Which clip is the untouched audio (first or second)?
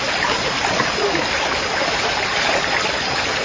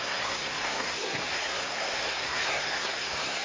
first